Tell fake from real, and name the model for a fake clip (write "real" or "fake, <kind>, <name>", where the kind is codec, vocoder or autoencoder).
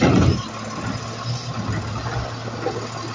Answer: real